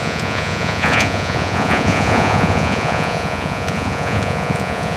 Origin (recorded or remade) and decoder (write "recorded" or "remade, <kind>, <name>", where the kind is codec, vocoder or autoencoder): remade, vocoder, Vocos